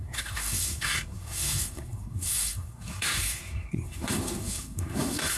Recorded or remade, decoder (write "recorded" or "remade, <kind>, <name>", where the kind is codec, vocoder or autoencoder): remade, codec, SNAC